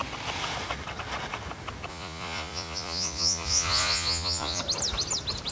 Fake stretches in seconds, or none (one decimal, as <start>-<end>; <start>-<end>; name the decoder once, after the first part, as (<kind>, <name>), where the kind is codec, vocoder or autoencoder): 1.9-4.6 (vocoder, Vocos)